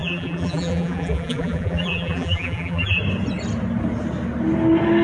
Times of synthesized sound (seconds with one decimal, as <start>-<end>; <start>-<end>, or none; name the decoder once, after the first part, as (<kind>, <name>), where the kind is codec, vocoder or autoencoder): 0.0-3.0 (vocoder, BigVGAN v2)